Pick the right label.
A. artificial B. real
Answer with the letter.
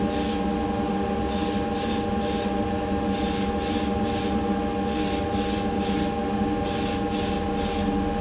B